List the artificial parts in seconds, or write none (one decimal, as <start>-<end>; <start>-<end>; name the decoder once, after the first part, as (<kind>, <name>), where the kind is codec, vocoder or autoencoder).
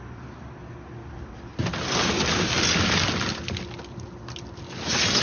none